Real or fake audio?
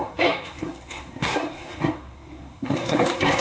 fake